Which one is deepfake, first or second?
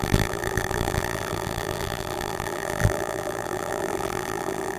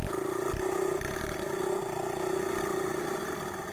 first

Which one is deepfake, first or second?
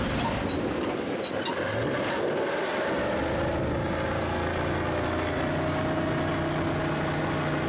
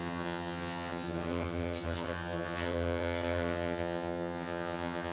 second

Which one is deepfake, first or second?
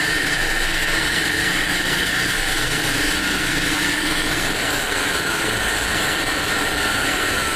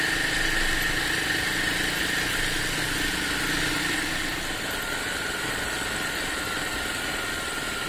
first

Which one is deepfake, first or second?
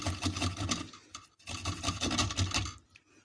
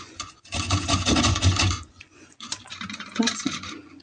second